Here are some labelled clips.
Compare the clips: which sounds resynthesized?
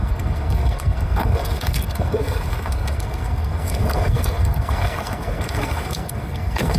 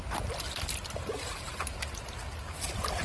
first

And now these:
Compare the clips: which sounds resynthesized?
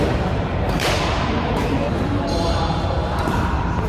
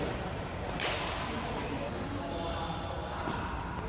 first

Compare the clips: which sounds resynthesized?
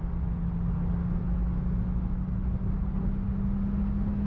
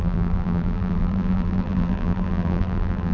second